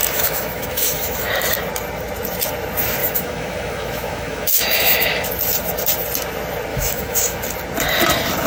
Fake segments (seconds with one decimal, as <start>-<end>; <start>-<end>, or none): 0.0-1.3; 3.0-5.3; 6.7-7.4